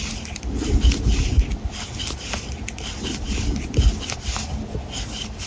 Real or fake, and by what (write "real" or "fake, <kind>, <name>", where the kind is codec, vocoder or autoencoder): real